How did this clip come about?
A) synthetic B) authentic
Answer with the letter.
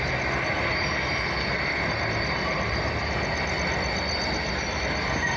B